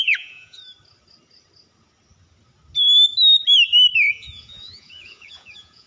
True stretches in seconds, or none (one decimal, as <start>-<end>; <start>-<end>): 0.6-4.1